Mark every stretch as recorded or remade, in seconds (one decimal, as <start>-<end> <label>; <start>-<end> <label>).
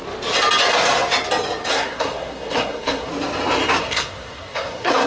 0.0-1.7 recorded; 1.7-3.1 remade; 3.1-3.8 recorded; 3.8-5.1 remade